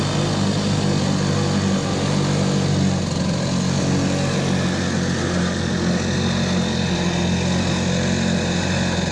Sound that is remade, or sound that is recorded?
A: recorded